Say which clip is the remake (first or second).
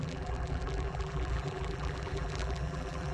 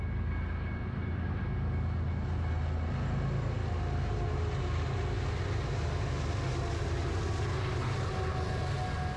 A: first